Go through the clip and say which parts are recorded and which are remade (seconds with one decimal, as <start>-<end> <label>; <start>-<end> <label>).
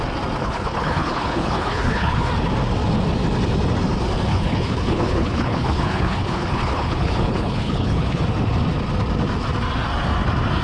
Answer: 0.0-0.4 recorded; 0.4-2.3 remade; 2.3-4.3 recorded; 4.3-8.2 remade; 8.2-10.6 recorded